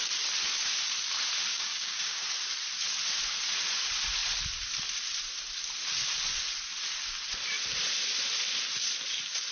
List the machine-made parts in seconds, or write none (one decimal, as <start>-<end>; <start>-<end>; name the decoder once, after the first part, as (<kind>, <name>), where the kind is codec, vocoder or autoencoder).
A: 1.5-2.2 (codec, DAC)